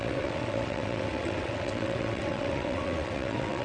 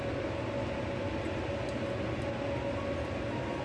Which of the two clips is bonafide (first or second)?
second